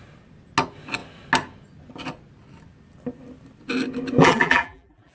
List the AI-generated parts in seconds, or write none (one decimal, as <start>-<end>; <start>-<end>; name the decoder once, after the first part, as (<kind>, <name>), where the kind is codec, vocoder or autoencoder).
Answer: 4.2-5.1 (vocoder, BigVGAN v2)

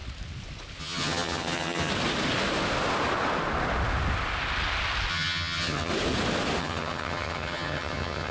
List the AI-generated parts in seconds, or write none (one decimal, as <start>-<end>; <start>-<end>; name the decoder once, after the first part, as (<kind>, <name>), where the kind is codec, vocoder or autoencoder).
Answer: 0.8-1.9 (vocoder, HiFi-GAN); 5.1-5.9; 6.6-8.3

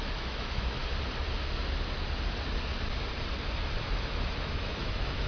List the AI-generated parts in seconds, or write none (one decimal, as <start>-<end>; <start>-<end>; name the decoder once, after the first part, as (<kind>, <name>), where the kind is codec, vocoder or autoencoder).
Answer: 0.0-0.8 (autoencoder, DAC-VAE); 4.0-5.3

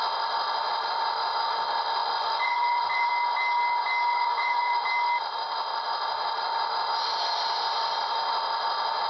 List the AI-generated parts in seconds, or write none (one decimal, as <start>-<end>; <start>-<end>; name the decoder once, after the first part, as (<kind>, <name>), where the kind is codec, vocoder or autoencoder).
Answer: 2.0-3.1 (vocoder, Vocos); 4.1-4.8

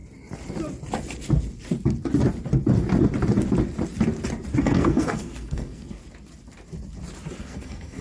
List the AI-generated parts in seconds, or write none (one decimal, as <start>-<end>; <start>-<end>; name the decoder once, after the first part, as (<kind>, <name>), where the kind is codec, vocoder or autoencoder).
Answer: 4.6-6.0 (codec, SNAC); 7.4-8.0